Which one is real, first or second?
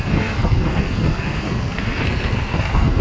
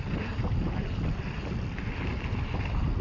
second